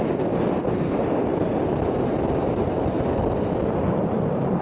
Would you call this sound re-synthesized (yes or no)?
no